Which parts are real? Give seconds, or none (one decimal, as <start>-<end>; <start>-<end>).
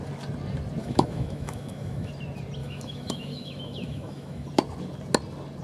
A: 0.0-0.8; 2.1-2.6; 4.5-5.6